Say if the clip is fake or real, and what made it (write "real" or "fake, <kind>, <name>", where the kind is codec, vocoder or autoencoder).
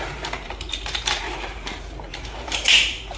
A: fake, vocoder, BigVGAN v2